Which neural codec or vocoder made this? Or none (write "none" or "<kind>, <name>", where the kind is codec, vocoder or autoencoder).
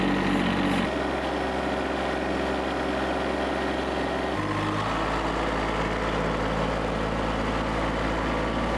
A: none